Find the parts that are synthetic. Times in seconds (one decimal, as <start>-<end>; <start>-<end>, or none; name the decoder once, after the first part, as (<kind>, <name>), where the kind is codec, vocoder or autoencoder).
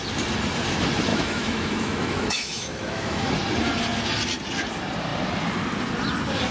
1.1-3.3 (autoencoder, DAC-VAE)